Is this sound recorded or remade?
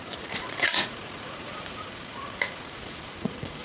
remade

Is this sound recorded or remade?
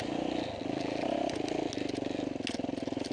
recorded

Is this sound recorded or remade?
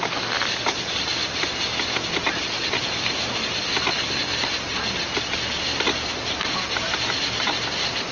recorded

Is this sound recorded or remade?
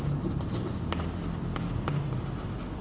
recorded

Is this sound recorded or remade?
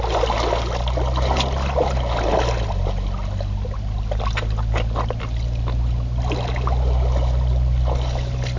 recorded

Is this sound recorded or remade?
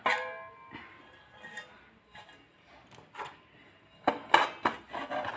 recorded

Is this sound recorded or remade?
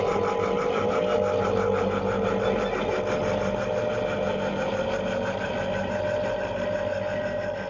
recorded